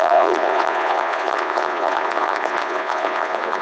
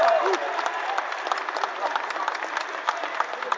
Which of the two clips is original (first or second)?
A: second